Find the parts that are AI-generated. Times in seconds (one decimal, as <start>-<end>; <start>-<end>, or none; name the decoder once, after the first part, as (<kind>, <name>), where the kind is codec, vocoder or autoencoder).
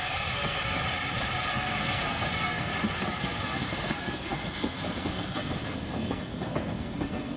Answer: 0.0-0.8 (codec, SNAC); 1.5-2.7; 3.2-7.4